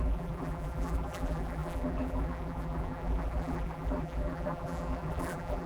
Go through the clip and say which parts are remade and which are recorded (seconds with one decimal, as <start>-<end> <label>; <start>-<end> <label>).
0.0-5.7 remade